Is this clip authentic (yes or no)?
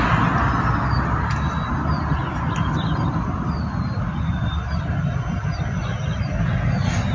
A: yes